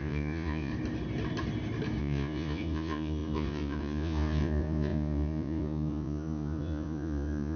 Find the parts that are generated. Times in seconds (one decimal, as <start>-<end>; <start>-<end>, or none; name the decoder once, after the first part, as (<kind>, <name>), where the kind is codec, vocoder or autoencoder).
0.0-0.7 (vocoder, Vocos); 2.0-7.6